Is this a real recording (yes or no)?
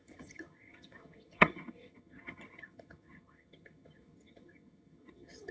no